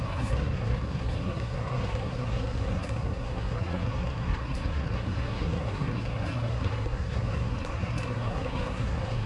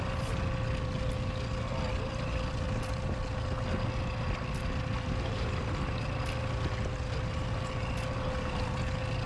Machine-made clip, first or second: first